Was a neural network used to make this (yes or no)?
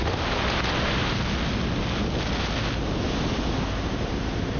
no